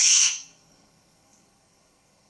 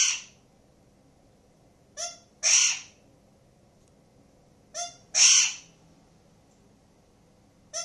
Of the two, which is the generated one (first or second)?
first